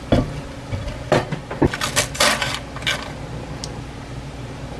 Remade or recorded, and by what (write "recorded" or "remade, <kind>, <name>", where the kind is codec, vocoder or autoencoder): recorded